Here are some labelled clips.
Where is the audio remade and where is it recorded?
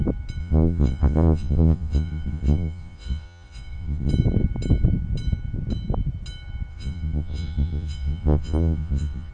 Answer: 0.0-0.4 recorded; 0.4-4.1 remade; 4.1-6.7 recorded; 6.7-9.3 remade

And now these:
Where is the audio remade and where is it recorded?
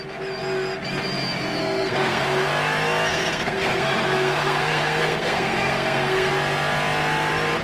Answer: 0.0-1.6 recorded; 1.6-2.5 remade; 2.5-3.1 recorded; 3.1-6.3 remade; 6.3-7.6 recorded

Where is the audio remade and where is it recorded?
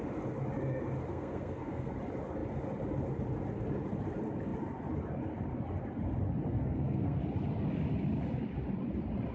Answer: 0.0-1.1 recorded; 1.1-1.9 remade; 1.9-6.5 recorded; 6.5-7.2 remade; 7.2-9.3 recorded